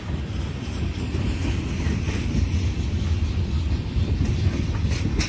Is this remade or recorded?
recorded